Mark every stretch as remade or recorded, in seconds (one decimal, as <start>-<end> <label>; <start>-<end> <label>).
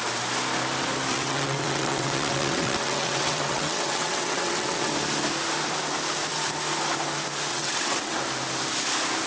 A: 0.0-1.1 recorded; 1.1-4.9 remade; 4.9-7.5 recorded; 7.5-8.2 remade; 8.2-9.3 recorded